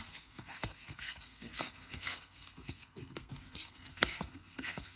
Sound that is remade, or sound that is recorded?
remade